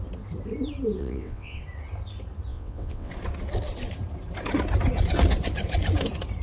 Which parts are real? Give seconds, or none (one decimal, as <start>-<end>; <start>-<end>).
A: 0.0-1.0; 1.6-2.5; 3.1-6.4